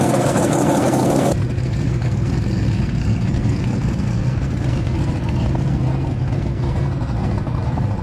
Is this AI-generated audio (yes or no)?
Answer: yes